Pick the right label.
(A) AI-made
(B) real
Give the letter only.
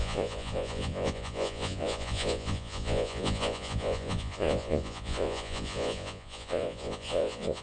A